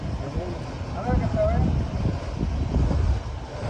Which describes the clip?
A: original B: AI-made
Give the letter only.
A